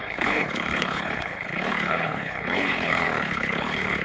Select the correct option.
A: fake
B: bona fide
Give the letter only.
A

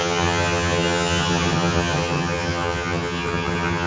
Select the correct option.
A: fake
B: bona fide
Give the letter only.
A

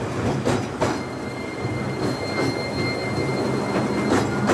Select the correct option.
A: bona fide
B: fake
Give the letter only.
A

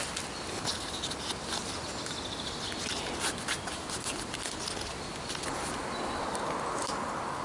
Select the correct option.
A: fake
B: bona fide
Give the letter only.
B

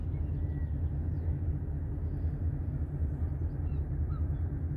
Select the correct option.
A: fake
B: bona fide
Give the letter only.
B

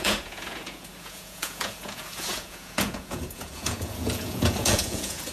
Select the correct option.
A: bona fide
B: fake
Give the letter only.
B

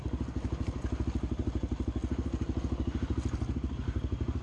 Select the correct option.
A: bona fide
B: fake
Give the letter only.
A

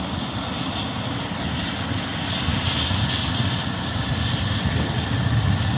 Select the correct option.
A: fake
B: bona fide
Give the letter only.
B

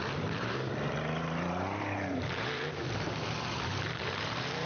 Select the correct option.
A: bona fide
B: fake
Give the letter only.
B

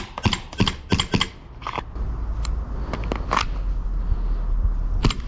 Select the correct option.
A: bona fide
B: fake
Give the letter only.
A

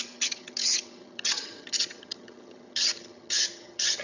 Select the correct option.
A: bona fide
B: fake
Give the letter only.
B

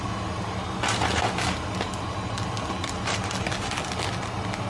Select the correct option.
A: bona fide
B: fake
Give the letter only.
A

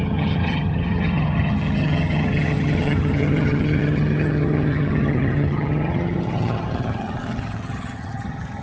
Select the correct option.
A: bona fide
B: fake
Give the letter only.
B